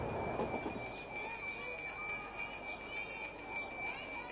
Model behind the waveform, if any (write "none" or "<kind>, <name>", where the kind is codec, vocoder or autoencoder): none